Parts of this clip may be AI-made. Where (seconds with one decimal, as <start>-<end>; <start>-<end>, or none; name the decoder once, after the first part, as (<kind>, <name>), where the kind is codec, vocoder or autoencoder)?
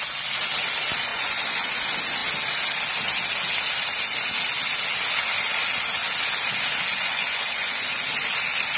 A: 1.1-1.7 (vocoder, Vocos); 6.9-8.0